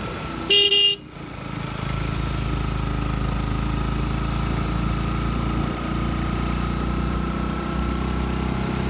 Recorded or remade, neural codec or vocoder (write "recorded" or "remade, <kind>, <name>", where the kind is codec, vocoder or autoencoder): recorded